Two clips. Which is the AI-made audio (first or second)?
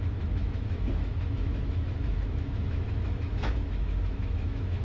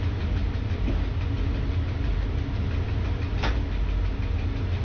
first